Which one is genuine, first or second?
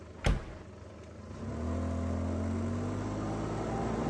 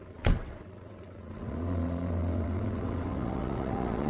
first